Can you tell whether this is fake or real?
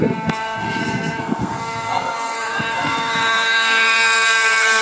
fake